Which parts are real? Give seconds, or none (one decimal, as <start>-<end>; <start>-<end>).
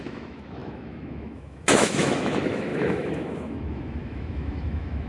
none